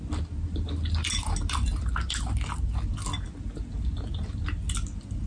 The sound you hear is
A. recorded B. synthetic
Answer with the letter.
A